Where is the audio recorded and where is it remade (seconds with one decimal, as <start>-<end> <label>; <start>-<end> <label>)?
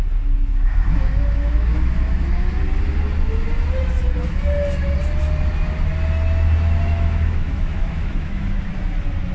0.0-0.5 recorded; 0.5-2.6 remade; 2.6-6.9 recorded; 6.9-8.7 remade; 8.7-9.3 recorded